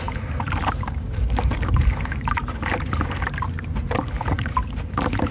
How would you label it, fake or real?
fake